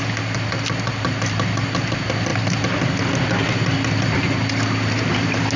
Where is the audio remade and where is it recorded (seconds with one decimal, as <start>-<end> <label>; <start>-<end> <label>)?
0.0-5.6 recorded